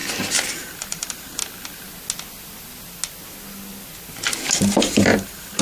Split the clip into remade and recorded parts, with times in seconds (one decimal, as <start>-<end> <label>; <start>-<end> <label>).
0.0-0.5 recorded; 0.5-1.4 remade; 1.4-4.8 recorded; 4.8-5.6 remade